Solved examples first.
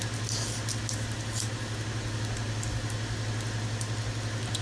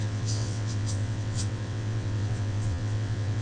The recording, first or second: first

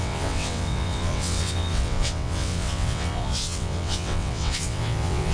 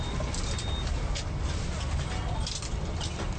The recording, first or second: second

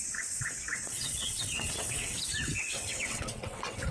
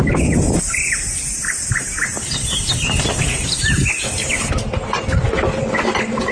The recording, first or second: second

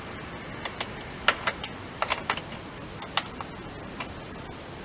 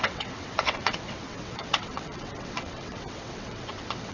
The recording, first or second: first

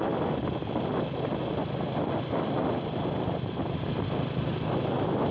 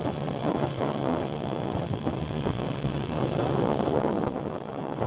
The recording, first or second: first